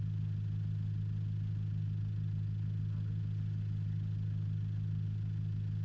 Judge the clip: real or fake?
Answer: real